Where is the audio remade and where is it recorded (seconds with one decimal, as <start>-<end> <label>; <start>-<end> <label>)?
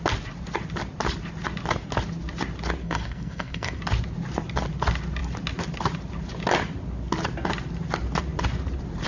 0.0-2.8 recorded; 2.8-3.8 remade; 3.8-9.1 recorded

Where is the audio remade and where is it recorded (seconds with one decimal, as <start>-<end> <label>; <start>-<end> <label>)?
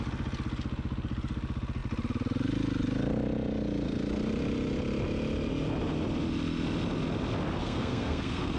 0.0-7.6 recorded; 7.6-8.6 remade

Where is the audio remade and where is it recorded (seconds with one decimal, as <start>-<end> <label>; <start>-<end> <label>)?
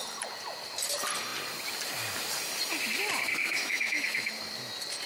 0.0-3.4 recorded; 3.4-4.3 remade; 4.3-5.1 recorded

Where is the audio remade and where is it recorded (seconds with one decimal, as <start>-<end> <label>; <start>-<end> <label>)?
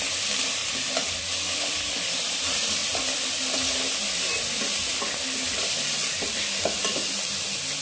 0.0-7.8 recorded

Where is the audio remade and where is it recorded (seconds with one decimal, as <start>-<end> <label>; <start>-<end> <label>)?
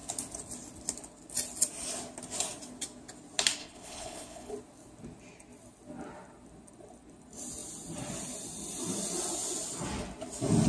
0.0-3.6 recorded; 3.6-4.5 remade; 4.5-10.7 recorded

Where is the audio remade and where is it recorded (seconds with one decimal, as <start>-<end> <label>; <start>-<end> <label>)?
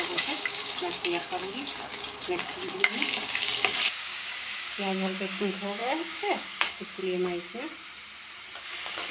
0.0-7.0 remade; 7.0-8.6 recorded; 8.6-9.1 remade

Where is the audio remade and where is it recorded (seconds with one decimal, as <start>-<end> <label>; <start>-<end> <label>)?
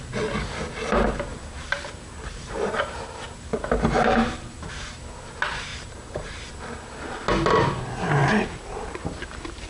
0.0-1.3 recorded; 1.3-5.0 remade; 5.0-5.7 recorded; 5.7-6.5 remade; 6.5-8.2 recorded; 8.2-9.7 remade